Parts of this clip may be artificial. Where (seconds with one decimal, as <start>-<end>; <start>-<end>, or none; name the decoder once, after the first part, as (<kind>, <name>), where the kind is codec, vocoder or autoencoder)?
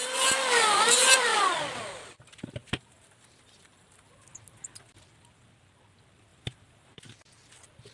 2.6-4.1 (vocoder, BigVGAN v2); 6.3-6.9